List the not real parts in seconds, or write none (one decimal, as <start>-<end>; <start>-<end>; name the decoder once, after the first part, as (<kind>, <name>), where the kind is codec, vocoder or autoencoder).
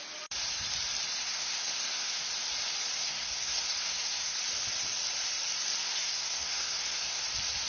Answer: 1.2-2.3 (codec, SNAC); 3.0-4.4; 5.8-7.2